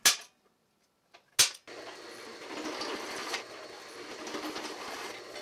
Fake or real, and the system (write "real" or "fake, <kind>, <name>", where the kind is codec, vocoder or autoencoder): real